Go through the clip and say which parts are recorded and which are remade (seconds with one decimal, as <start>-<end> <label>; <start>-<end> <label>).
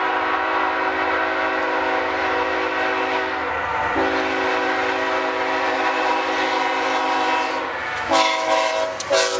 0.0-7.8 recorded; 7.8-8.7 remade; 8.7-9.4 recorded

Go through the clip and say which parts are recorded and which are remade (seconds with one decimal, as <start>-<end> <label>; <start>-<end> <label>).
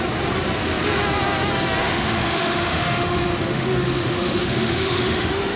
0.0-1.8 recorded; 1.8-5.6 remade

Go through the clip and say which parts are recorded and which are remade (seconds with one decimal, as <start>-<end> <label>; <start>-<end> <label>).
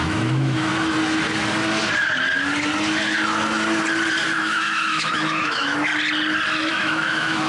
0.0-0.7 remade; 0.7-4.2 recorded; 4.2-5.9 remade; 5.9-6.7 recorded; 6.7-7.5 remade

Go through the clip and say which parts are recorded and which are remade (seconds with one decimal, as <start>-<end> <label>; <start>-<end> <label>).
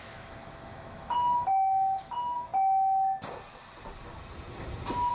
0.0-2.5 remade; 2.5-5.1 recorded